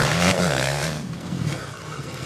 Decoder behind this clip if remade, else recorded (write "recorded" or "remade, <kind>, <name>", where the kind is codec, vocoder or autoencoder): remade, codec, SNAC